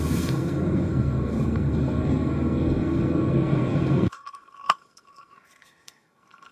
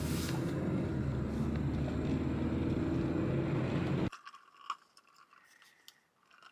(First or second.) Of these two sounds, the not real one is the first